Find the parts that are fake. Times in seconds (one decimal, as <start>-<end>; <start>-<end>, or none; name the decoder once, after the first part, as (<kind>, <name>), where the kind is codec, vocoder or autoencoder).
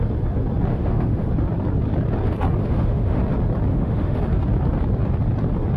0.7-1.3 (autoencoder, DAC-VAE); 2.6-3.2; 3.7-4.2